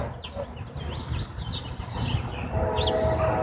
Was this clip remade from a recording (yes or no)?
no